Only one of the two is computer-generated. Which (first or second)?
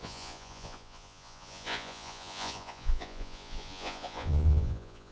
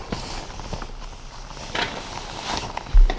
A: first